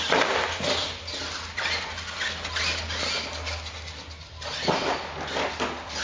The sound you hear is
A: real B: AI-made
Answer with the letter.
A